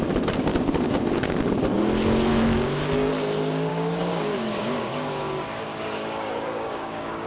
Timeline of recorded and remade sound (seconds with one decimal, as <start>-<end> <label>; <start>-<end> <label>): 0.0-0.5 recorded; 0.5-1.4 remade; 1.4-2.3 recorded; 2.3-3.1 remade; 3.1-3.7 recorded; 3.7-7.3 remade